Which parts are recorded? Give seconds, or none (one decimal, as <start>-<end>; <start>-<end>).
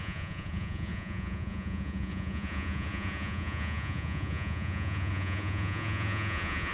none